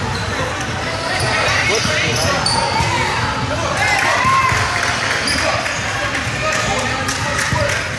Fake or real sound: real